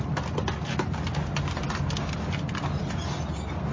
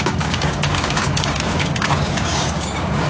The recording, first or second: first